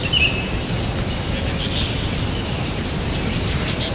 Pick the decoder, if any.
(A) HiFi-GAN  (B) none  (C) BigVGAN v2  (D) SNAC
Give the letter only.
B